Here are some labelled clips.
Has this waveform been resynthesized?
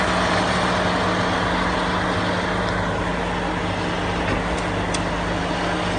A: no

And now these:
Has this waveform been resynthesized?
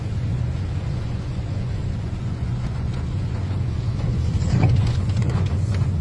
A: yes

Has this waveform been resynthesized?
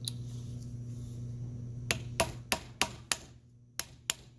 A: no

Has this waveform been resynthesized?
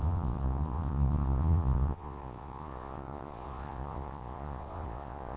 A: yes